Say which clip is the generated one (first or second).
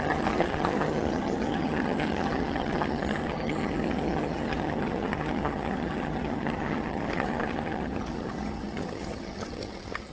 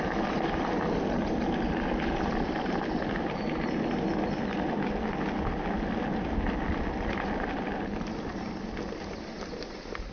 first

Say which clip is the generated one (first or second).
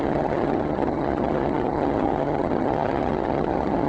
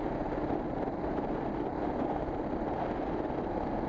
first